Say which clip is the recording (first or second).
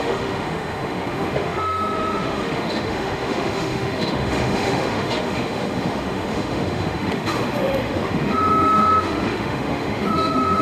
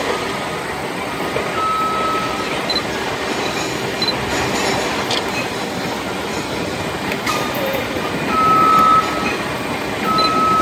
second